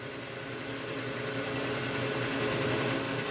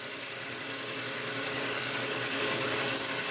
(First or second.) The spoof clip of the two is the second